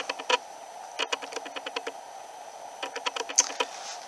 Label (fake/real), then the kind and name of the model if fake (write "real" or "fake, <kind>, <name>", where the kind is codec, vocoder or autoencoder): real